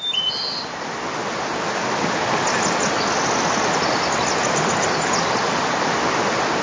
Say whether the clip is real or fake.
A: real